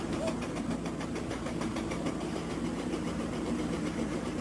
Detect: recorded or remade remade